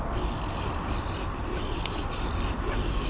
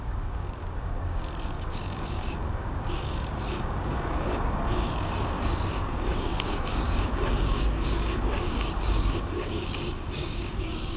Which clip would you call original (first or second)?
first